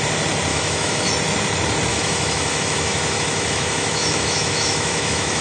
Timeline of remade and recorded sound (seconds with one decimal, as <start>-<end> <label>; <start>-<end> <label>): 0.0-0.5 recorded; 0.5-1.1 remade; 1.1-1.9 recorded; 1.9-5.4 remade